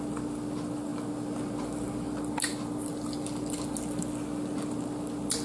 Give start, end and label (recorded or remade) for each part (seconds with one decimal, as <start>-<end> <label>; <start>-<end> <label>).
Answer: 0.0-5.4 recorded